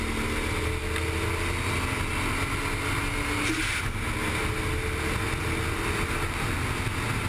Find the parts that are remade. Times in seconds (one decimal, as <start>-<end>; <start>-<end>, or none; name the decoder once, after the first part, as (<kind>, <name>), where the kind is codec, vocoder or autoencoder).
none